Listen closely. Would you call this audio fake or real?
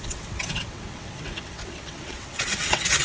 fake